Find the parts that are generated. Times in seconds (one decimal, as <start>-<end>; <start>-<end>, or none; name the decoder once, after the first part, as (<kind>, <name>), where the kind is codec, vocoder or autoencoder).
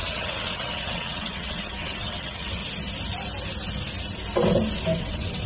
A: 0.0-2.6 (vocoder, WaveNeXt); 5.0-5.5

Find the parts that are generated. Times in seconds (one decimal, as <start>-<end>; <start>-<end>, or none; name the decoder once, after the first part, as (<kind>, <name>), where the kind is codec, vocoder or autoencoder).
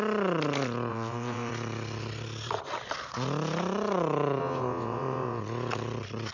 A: 0.9-1.5 (vocoder, WaveNeXt); 4.4-5.4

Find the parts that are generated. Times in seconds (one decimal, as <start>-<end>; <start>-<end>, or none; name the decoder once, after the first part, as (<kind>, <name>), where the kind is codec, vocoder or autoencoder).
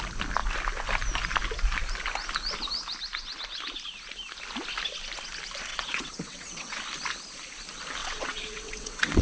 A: 5.7-6.8 (vocoder, WaveNeXt); 8.0-9.2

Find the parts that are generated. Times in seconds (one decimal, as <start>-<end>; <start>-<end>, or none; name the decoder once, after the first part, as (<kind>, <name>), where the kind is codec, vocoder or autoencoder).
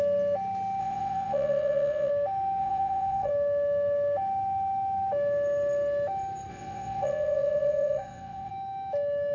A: 0.8-2.1 (vocoder, WaveNeXt); 2.6-3.3; 6.5-8.5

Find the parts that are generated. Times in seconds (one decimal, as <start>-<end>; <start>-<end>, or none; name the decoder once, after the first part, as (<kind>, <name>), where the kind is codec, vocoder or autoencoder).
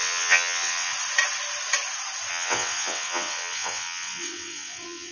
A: 0.0-0.9 (vocoder, WaveNeXt); 2.3-5.1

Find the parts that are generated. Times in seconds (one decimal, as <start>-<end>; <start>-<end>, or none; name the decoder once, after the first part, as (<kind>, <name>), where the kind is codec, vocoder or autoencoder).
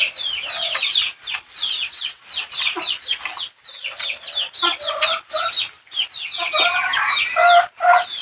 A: 1.6-2.2 (vocoder, WaveNeXt)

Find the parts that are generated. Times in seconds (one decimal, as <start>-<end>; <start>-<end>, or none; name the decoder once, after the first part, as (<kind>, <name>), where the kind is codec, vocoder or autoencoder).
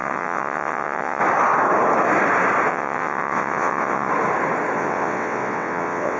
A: 0.0-1.2 (vocoder, WaveNeXt); 2.7-4.1; 4.8-6.2